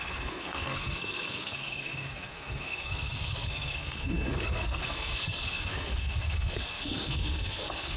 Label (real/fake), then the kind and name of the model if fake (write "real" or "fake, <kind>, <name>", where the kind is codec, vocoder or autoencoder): fake, codec, SNAC